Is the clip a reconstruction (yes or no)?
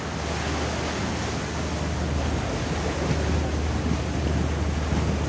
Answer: no